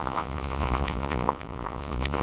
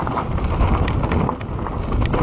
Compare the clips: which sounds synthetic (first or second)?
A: first